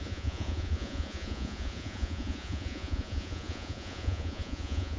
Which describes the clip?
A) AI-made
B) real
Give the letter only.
A